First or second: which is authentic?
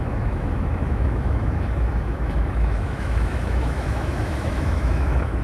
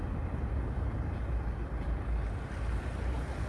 second